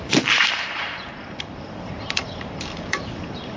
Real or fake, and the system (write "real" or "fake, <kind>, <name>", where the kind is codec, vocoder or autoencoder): fake, vocoder, BigVGAN v2